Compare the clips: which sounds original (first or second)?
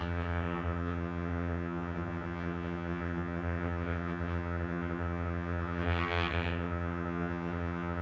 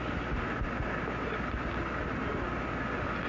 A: second